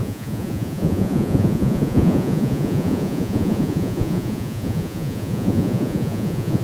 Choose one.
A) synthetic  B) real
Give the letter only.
A